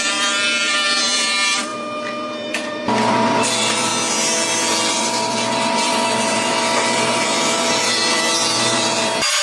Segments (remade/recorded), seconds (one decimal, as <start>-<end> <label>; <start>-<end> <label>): 0.0-3.9 remade; 3.9-4.7 recorded; 4.7-9.4 remade